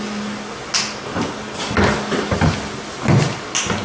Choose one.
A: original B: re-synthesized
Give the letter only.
A